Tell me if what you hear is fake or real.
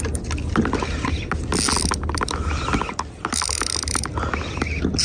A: real